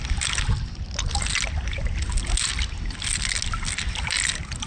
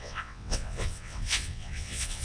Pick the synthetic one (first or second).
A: second